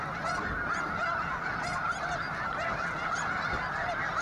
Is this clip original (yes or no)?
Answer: yes